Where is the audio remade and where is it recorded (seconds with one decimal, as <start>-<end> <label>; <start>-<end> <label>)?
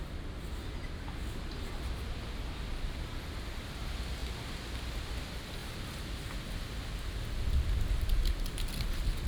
0.0-9.3 recorded